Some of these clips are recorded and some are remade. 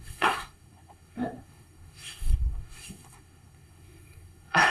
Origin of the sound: remade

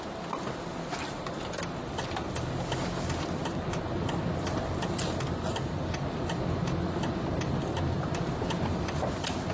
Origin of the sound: recorded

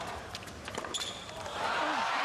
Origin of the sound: remade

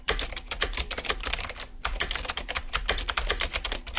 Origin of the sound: remade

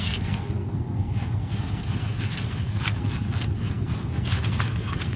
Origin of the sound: remade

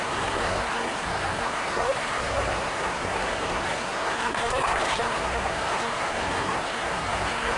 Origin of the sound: remade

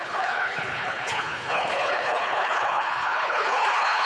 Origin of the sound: remade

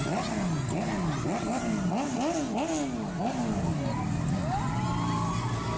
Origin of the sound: recorded